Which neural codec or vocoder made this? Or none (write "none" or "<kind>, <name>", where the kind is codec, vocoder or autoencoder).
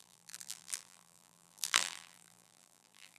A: vocoder, BigVGAN v2